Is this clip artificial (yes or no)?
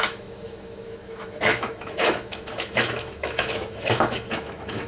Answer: yes